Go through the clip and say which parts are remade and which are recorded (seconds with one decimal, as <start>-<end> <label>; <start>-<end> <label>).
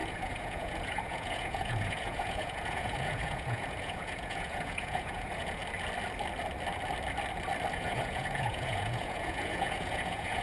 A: 0.0-5.6 remade; 5.6-7.7 recorded; 7.7-10.4 remade